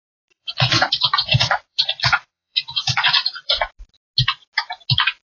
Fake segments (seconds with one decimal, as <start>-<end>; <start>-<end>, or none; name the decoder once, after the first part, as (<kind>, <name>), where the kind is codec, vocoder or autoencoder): 0.4-3.6 (vocoder, Vocos)